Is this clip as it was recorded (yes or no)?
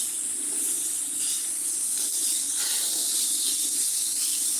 yes